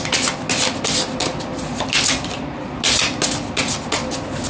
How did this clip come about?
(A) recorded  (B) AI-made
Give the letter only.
A